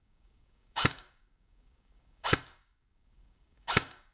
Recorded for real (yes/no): no